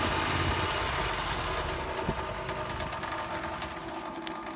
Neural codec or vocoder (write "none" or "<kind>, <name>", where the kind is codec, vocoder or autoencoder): none